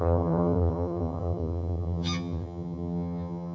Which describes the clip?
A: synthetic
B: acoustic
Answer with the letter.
A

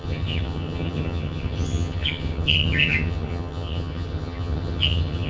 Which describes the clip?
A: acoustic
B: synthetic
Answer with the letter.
B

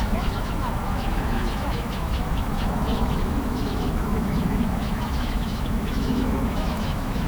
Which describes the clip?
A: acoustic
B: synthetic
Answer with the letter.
B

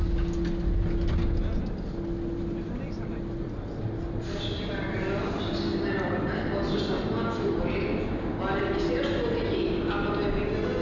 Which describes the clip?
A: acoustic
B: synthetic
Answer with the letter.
A